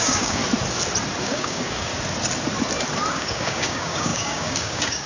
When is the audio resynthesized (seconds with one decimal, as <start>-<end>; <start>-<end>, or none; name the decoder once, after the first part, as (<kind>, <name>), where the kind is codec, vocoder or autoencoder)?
0.0-0.4 (codec, DAC); 1.2-1.9; 3.1-5.1